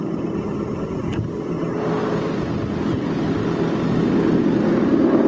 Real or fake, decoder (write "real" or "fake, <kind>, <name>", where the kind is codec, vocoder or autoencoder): real